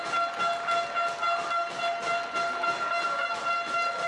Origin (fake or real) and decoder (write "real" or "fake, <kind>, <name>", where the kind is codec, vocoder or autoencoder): real